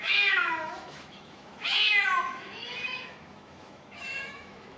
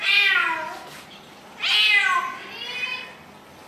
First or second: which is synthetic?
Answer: first